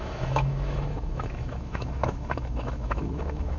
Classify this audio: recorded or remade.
remade